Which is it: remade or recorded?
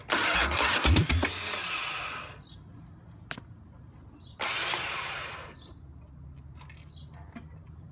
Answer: recorded